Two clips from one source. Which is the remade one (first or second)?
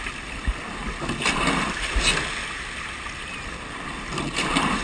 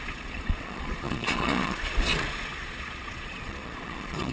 second